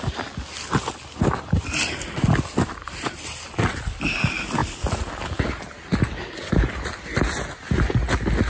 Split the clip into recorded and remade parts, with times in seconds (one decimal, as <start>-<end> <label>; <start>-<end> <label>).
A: 0.0-8.5 recorded